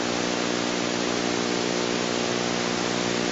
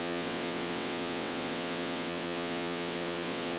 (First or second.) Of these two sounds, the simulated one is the second